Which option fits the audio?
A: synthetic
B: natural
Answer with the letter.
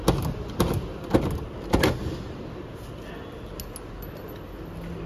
B